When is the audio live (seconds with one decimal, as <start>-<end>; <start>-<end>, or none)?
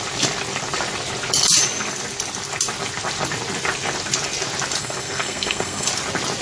0.0-4.8; 5.9-6.4